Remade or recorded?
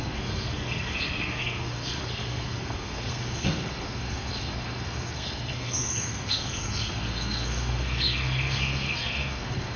remade